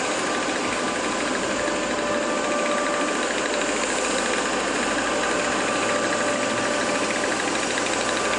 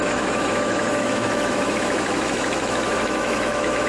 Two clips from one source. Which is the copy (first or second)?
second